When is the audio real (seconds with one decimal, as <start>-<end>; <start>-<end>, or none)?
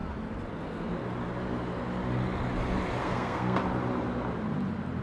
0.0-3.0; 3.6-5.0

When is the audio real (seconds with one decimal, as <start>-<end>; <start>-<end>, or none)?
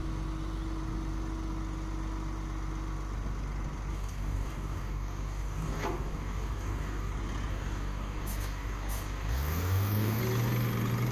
0.0-3.9; 7.1-7.5; 10.2-11.1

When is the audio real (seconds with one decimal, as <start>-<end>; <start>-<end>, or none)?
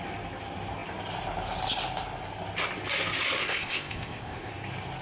0.0-3.4; 4.5-5.0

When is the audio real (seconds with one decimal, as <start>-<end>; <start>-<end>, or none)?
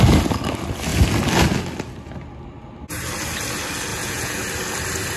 0.0-3.9; 4.4-5.2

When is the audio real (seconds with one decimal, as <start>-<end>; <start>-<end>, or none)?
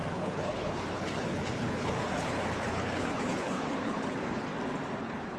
4.5-5.0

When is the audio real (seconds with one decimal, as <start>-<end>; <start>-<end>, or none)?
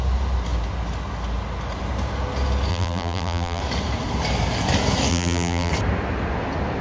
0.0-2.7; 3.6-5.1; 5.7-6.8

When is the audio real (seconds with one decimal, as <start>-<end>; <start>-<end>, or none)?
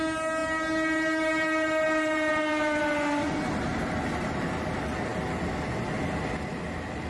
0.0-7.1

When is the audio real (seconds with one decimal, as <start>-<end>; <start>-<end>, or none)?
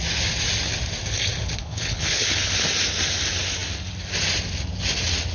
0.0-1.6; 2.5-5.3